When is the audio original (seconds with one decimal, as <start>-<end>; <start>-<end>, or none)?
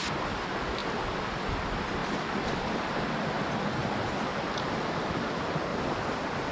0.0-0.8; 1.4-2.0; 2.9-5.7